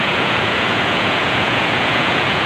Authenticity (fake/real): fake